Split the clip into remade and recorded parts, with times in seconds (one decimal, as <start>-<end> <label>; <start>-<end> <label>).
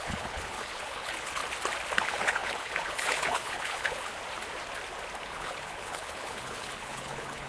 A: 0.0-1.4 remade; 1.4-2.0 recorded; 2.0-4.1 remade; 4.1-5.2 recorded; 5.2-7.5 remade